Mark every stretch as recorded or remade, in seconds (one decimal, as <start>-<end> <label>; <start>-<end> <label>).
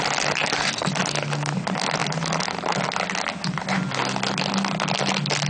0.0-5.5 recorded